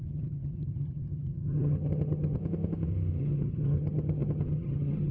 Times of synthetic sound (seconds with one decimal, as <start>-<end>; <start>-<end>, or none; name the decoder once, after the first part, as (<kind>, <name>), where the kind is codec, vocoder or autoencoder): 0.0-2.4 (vocoder, HiFi-GAN); 3.2-5.1